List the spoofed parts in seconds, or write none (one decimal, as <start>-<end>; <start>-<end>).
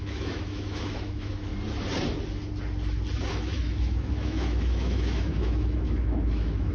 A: 0.0-1.5; 3.3-6.7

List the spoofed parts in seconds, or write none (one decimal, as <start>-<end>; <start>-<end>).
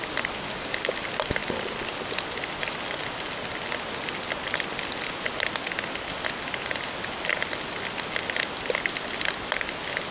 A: none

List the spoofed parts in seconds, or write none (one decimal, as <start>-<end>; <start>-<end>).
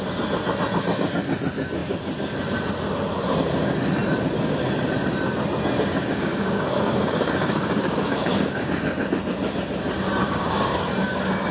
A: 5.9-9.1; 10.2-10.9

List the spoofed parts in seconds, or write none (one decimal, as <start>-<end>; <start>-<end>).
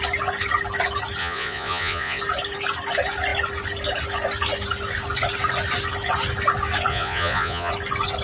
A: 1.2-2.2; 6.9-7.7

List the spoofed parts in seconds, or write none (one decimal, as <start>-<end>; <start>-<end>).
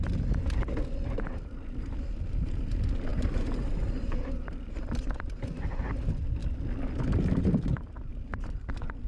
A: 3.1-4.5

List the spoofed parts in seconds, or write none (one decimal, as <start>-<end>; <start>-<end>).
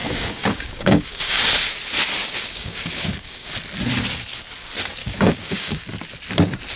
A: 0.0-1.4; 2.2-3.5; 5.0-5.9